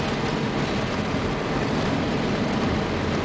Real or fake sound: real